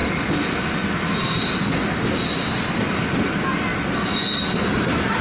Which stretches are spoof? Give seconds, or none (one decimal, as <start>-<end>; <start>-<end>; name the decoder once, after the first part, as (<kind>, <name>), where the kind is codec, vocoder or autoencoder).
none